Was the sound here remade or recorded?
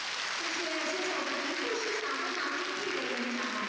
recorded